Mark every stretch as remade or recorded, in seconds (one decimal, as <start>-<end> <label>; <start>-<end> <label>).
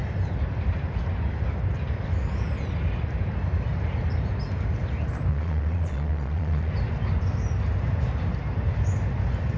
0.0-5.3 recorded; 5.3-6.7 remade; 6.7-9.6 recorded